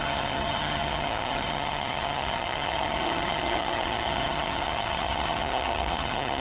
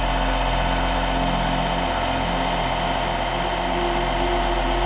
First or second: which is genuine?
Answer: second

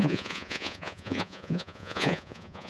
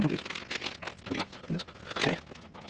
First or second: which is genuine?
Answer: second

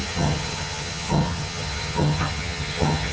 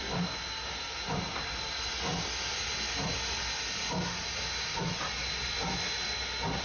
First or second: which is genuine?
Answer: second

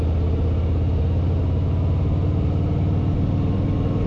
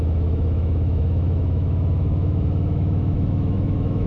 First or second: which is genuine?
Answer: first